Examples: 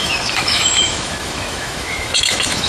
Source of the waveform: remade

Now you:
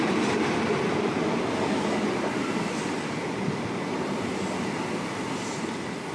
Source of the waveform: recorded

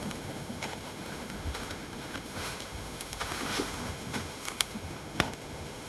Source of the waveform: remade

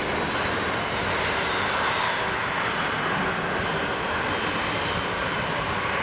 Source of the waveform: recorded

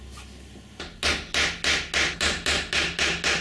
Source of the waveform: recorded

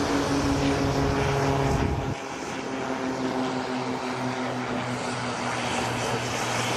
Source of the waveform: recorded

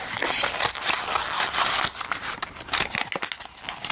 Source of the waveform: recorded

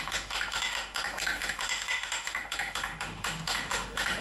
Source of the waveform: remade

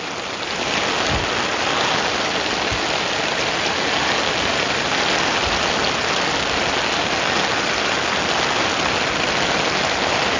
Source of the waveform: recorded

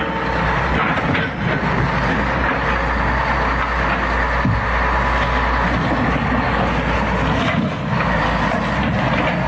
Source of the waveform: recorded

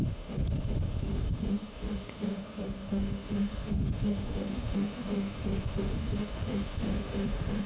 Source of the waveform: remade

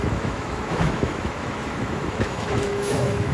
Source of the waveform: remade